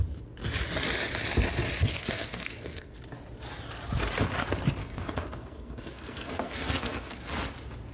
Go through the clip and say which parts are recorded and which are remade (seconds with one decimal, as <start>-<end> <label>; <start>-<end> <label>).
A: 0.0-1.9 recorded; 1.9-3.0 remade; 3.0-4.8 recorded; 4.8-7.3 remade; 7.3-7.9 recorded